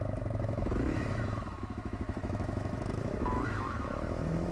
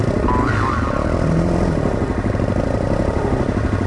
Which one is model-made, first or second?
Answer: first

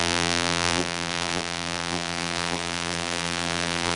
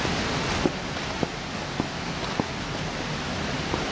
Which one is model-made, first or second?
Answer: first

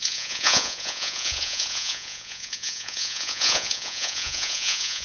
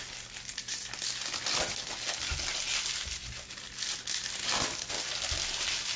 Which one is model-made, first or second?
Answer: first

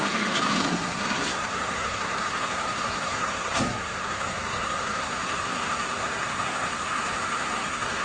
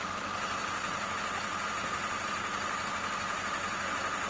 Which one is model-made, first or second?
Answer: first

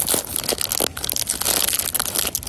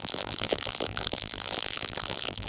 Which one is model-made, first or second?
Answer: second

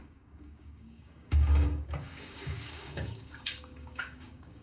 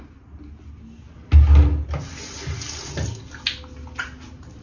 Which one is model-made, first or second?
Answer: first